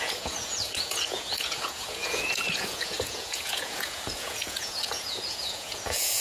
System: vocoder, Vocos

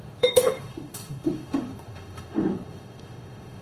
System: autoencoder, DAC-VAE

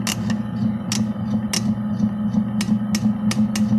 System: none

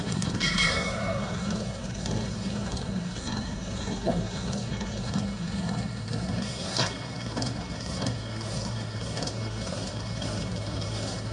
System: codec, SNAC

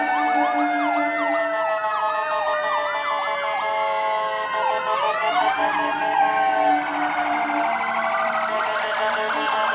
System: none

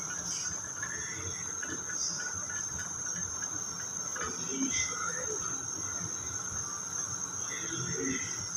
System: none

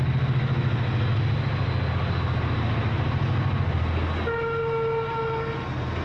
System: none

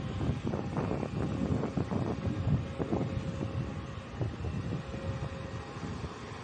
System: none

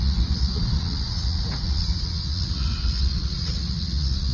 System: vocoder, Vocos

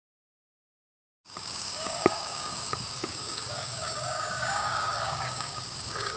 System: codec, DAC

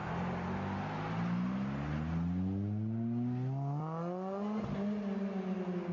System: none